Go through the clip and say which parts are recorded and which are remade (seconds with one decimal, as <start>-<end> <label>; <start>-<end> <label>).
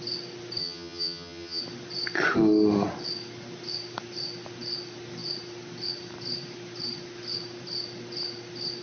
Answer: 0.0-0.6 recorded; 0.6-1.6 remade; 1.6-8.8 recorded